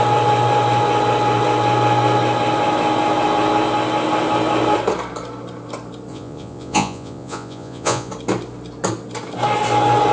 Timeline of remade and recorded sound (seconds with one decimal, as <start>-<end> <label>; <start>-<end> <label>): 0.0-6.1 recorded; 6.1-8.1 remade; 8.1-10.1 recorded